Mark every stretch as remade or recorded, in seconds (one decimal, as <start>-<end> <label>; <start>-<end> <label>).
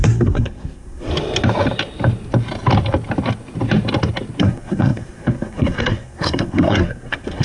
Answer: 0.0-1.1 remade; 1.1-4.4 recorded; 4.4-7.4 remade